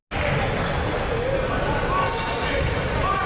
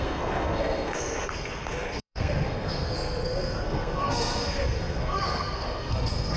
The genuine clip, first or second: first